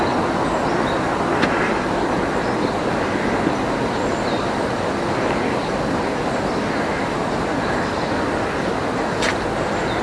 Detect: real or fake real